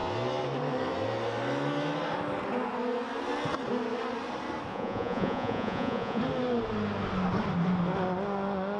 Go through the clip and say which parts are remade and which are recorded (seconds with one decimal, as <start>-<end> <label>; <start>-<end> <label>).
0.0-4.7 recorded; 4.7-6.2 remade; 6.2-8.8 recorded